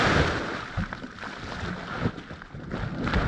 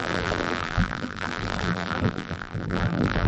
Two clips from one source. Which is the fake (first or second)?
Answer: second